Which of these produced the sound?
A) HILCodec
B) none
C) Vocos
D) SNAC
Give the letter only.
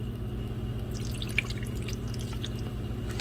B